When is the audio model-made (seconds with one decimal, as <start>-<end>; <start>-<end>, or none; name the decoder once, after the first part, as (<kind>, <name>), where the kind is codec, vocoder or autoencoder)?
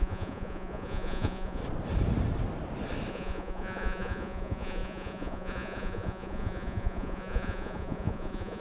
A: 0.0-1.6 (vocoder, Vocos); 3.1-8.6